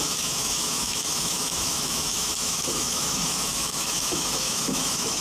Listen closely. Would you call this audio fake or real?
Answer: fake